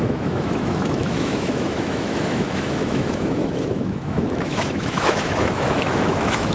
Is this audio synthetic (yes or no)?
yes